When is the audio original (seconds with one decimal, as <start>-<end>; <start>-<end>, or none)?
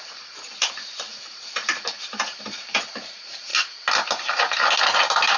3.5-4.1; 4.6-5.4